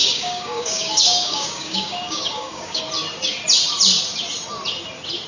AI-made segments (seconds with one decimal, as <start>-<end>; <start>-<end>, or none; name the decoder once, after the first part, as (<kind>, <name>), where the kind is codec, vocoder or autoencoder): 0.0-2.8 (codec, DAC)